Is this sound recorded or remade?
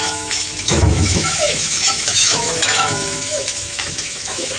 remade